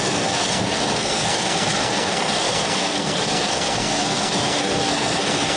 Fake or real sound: fake